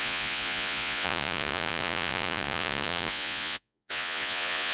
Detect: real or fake fake